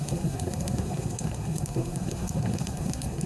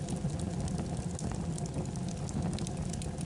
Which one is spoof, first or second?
first